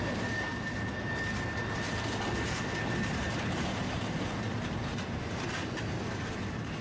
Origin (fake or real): real